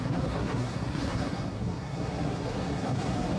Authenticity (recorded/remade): remade